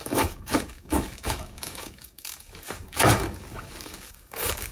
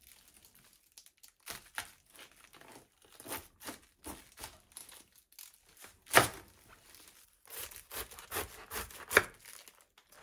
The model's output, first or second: first